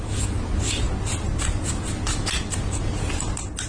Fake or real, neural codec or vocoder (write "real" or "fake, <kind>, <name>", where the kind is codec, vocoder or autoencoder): real